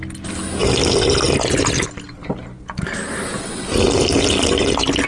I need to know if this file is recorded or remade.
recorded